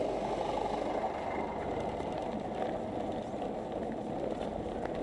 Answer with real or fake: real